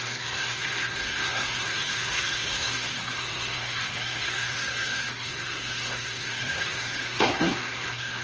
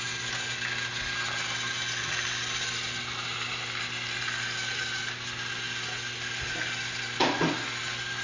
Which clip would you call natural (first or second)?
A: second